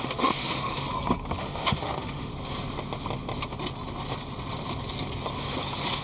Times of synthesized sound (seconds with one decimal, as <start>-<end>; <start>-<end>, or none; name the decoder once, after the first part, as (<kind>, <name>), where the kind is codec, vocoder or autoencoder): 0.0-0.8 (autoencoder, DAC-VAE); 1.4-2.3